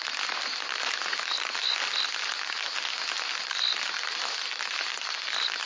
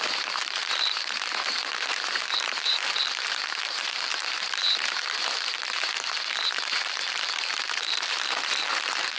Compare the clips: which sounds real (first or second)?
first